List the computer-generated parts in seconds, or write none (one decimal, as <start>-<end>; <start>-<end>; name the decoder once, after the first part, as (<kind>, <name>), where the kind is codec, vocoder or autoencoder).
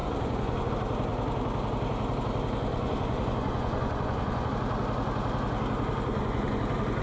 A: 0.0-0.7 (vocoder, Vocos); 2.7-4.5; 6.1-6.6